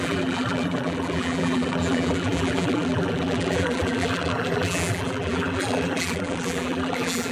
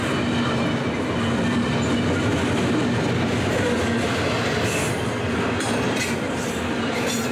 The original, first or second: second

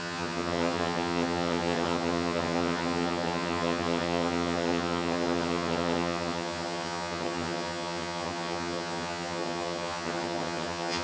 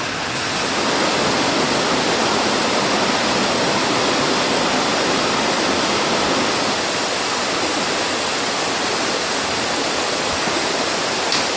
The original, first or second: second